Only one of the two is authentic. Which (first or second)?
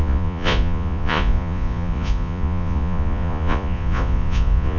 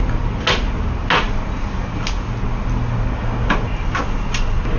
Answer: second